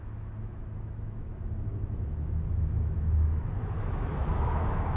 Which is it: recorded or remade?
remade